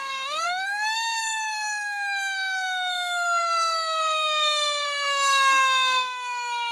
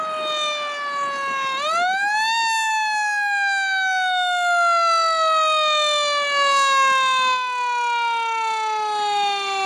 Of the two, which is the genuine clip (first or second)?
second